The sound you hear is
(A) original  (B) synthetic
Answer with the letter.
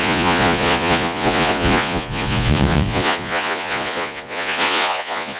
B